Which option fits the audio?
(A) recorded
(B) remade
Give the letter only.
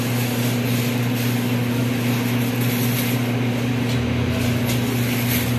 A